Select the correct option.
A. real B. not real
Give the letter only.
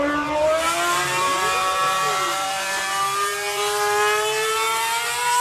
B